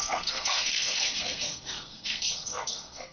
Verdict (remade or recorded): remade